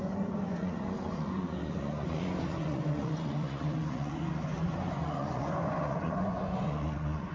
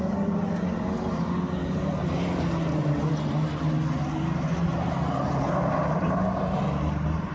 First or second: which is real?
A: second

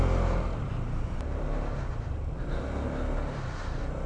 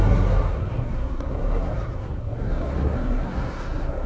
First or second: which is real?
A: first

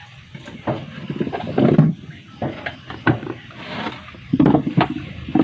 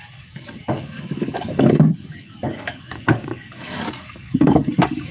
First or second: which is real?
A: first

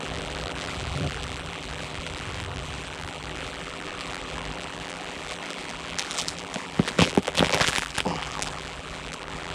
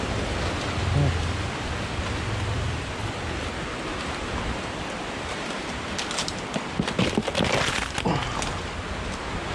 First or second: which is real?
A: second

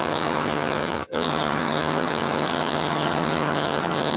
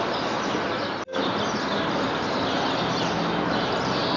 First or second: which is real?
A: second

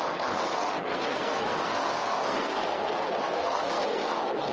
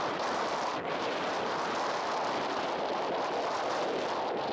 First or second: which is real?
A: second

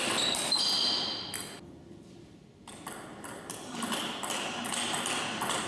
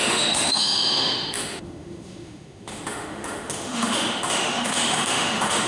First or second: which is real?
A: first